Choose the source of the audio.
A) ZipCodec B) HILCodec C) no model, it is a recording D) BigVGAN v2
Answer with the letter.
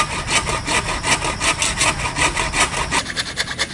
C